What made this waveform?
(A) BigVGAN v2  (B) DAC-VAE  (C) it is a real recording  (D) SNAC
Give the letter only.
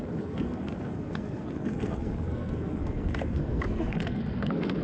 D